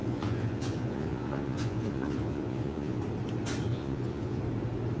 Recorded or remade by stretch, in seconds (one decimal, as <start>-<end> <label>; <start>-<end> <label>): 0.0-3.0 remade; 3.0-3.7 recorded; 3.7-4.4 remade; 4.4-5.0 recorded